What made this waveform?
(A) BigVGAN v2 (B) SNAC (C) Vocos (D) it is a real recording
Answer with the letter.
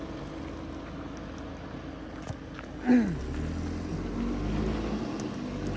D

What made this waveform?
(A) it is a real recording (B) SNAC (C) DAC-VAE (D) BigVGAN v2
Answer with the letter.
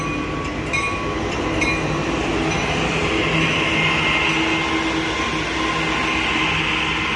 A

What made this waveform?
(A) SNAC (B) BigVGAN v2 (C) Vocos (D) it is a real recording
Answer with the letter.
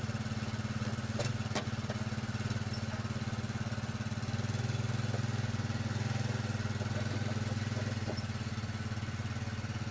D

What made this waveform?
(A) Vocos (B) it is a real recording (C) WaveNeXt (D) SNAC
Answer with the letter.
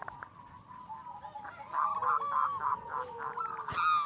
B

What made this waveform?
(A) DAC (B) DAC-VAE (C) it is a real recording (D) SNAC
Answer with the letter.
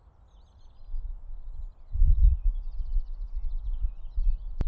C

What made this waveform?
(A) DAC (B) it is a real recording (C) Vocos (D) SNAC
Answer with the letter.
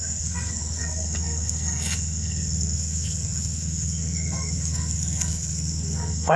D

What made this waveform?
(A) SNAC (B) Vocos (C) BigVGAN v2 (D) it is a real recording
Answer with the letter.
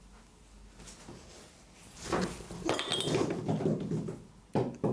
D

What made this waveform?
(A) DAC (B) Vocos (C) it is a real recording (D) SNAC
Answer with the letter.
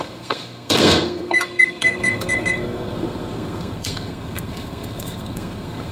D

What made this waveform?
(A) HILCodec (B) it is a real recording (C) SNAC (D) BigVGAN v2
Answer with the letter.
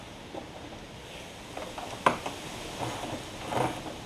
B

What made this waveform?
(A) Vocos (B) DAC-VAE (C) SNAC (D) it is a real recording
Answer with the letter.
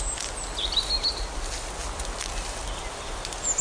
D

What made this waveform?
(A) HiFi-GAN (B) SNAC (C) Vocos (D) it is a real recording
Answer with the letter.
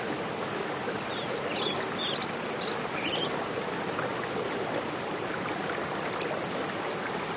D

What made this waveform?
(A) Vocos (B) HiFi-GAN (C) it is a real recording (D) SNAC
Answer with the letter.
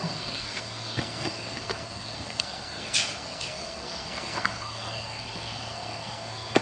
D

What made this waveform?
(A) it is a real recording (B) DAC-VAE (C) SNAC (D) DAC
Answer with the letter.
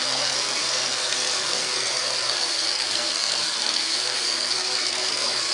C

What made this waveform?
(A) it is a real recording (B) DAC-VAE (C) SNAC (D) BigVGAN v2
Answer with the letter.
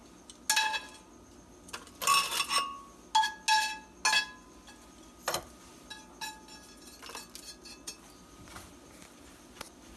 A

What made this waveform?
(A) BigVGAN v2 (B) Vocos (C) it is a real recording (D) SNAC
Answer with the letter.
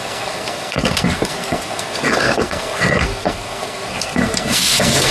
D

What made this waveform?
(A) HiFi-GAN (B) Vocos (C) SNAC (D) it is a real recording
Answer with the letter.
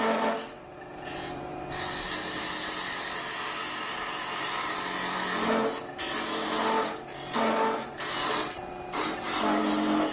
D